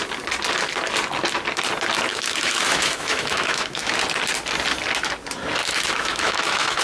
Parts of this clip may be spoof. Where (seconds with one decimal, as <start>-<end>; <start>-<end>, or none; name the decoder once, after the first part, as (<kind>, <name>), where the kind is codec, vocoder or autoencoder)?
2.1-3.9 (autoencoder, DAC-VAE); 5.6-6.8